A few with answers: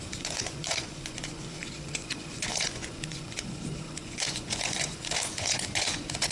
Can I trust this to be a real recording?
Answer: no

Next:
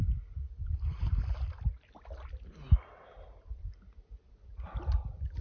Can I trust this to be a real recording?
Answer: yes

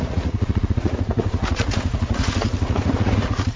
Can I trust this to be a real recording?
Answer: no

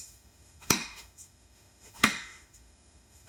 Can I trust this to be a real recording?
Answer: no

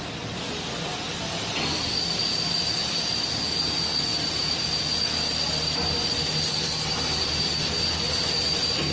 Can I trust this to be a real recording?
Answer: yes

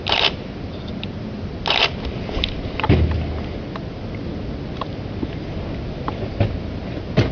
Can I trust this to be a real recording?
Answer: yes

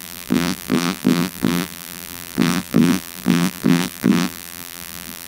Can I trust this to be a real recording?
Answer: no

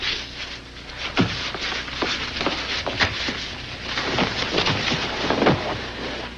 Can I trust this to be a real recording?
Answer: yes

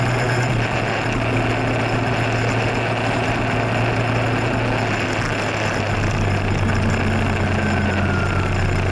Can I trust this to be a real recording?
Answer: yes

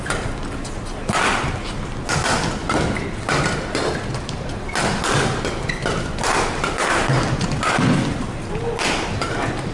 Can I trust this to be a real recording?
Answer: yes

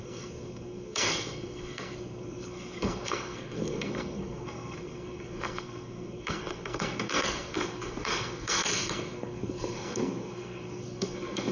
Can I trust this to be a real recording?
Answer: no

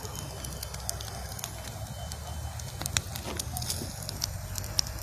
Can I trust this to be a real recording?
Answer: no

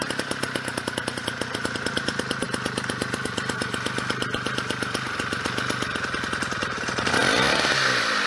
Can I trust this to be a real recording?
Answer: yes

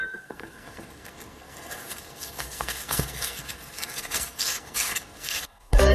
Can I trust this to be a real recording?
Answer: no